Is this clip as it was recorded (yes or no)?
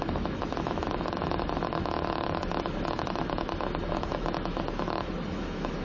no